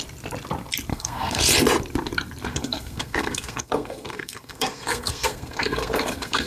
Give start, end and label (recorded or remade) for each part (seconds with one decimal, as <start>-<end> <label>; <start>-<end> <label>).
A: 0.0-0.9 recorded; 0.9-1.4 remade; 1.4-2.5 recorded; 2.5-6.5 remade